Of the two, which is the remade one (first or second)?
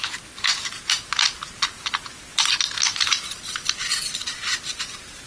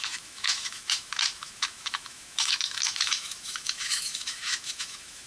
second